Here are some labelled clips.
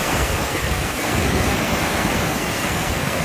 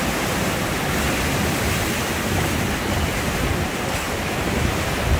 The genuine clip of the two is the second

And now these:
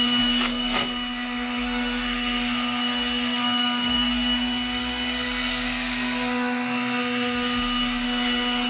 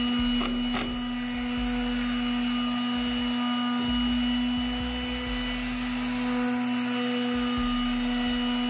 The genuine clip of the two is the second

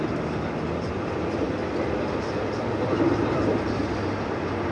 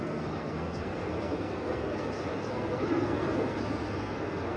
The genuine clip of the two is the first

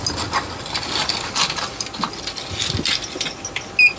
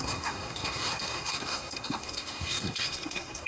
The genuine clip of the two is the first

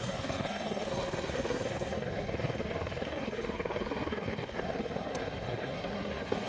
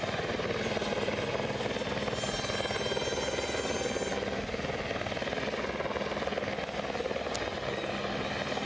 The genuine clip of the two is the second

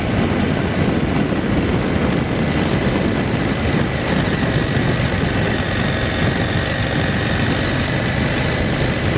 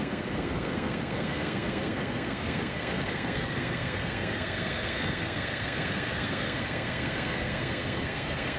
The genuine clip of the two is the first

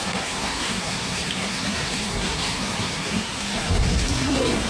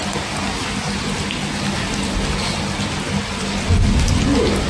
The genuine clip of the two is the second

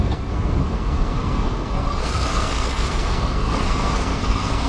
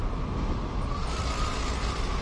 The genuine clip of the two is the second